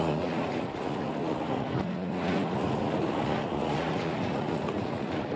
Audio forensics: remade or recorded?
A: remade